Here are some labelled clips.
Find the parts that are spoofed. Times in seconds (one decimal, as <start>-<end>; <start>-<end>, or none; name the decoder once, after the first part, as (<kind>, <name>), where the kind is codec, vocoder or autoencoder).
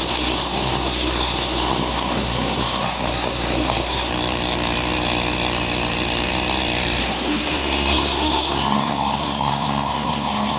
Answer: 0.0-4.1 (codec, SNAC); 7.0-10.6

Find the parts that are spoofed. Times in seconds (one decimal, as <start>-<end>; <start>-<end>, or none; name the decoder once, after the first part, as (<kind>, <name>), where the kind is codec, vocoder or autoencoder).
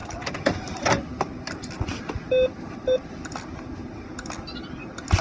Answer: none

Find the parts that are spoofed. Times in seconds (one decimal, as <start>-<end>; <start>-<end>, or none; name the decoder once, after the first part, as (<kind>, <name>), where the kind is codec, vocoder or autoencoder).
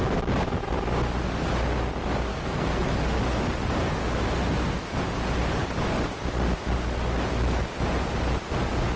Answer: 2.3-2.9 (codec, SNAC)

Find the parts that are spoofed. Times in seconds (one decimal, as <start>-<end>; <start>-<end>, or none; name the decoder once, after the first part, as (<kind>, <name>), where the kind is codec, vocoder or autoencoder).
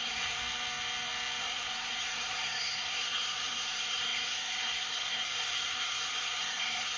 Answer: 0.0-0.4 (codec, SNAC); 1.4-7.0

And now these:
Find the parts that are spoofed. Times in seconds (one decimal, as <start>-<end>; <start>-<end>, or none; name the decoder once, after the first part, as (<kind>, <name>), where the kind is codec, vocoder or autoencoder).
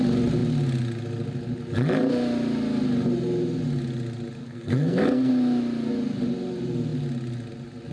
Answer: 4.4-5.3 (codec, SNAC)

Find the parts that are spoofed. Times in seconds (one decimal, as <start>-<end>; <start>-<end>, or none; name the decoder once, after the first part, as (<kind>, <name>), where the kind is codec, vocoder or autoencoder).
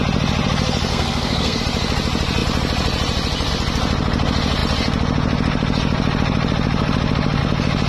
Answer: 0.9-1.6 (codec, SNAC)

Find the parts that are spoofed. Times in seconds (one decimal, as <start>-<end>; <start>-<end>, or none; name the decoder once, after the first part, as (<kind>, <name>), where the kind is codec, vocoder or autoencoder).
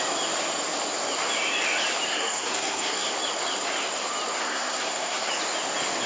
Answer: 2.1-3.1 (codec, SNAC); 4.4-5.3